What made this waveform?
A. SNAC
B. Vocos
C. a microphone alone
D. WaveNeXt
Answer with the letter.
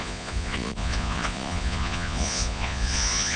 B